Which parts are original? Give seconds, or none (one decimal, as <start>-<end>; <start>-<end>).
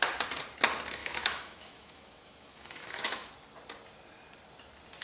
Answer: 0.0-1.0; 3.3-5.0